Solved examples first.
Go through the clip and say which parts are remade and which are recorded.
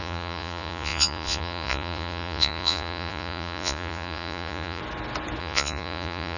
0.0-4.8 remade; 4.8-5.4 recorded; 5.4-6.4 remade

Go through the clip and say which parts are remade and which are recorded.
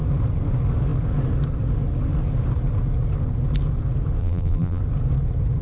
0.0-4.2 recorded; 4.2-4.8 remade; 4.8-5.6 recorded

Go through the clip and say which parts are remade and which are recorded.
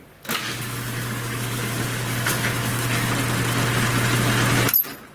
0.0-3.1 remade; 3.1-5.1 recorded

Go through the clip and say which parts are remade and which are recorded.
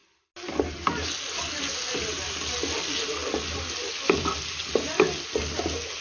0.0-6.0 recorded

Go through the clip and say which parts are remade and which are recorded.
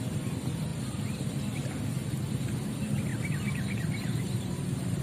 0.0-0.7 recorded; 0.7-1.4 remade; 1.4-3.1 recorded; 3.1-5.0 remade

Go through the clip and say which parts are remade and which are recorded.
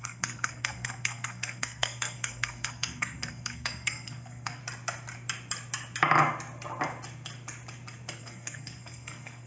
0.0-4.6 remade; 4.6-8.2 recorded; 8.2-9.5 remade